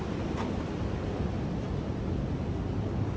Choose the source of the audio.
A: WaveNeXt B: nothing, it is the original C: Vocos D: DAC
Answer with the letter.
B